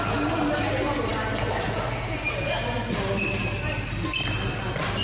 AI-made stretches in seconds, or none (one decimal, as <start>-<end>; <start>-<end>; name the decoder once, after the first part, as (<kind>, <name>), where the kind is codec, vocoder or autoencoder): none